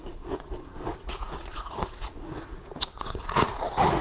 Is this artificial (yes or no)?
yes